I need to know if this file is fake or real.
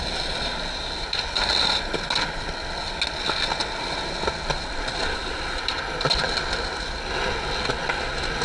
real